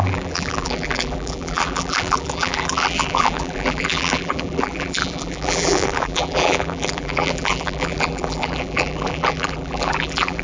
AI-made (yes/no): yes